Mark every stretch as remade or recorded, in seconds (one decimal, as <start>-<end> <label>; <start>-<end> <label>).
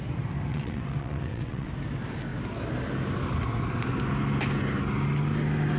0.0-0.5 recorded; 0.5-1.7 remade; 1.7-5.8 recorded